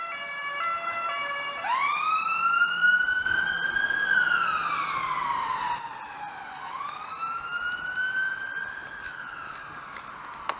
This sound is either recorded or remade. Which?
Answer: recorded